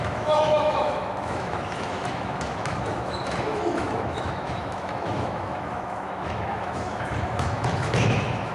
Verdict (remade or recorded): remade